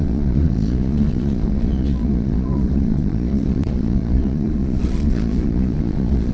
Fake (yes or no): yes